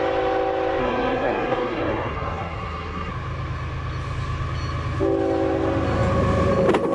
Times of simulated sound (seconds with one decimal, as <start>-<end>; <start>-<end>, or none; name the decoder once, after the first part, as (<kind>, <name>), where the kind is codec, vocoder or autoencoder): 0.8-3.1 (codec, SNAC)